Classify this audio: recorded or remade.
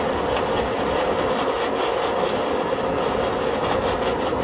recorded